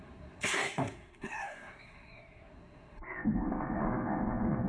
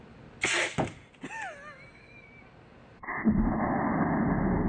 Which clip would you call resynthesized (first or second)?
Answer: first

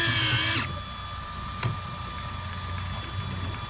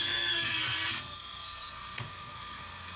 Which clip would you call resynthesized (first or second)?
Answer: second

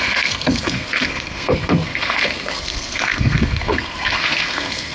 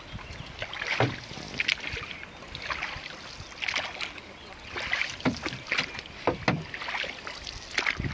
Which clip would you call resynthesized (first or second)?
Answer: first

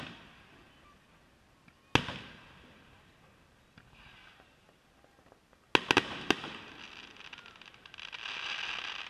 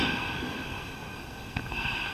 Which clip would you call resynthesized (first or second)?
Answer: second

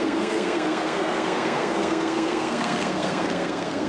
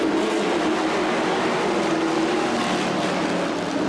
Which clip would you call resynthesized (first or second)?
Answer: first